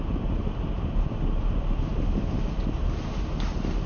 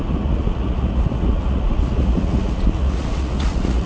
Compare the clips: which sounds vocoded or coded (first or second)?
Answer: second